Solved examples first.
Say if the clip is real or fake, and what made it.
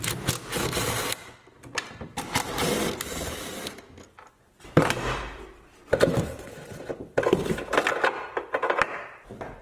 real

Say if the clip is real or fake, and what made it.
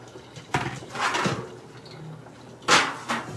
real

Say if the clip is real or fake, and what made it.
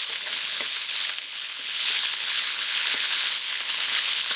fake, codec, HILCodec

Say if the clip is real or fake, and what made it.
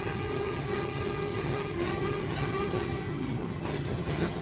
fake, vocoder, HiFi-GAN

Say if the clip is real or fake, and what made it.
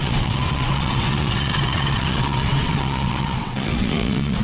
fake, vocoder, WaveNeXt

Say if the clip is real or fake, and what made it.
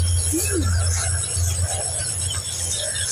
fake, vocoder, BigVGAN v2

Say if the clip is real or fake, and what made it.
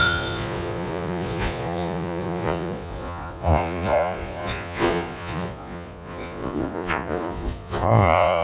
fake, vocoder, Vocos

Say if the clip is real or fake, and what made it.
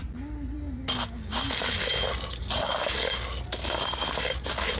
real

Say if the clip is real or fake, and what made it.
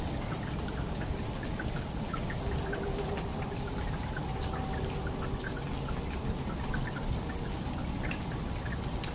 real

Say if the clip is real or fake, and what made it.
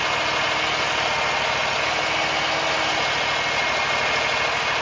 real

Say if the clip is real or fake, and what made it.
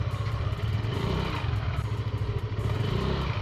fake, vocoder, BigVGAN v2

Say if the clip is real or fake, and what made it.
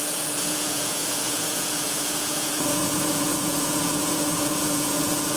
fake, vocoder, Vocos